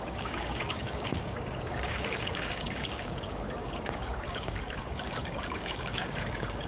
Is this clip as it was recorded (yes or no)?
no